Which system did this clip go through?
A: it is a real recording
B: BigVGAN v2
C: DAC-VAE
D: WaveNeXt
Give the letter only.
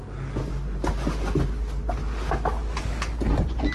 A